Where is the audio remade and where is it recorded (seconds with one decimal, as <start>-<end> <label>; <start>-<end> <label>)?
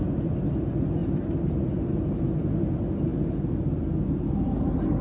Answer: 0.0-5.0 recorded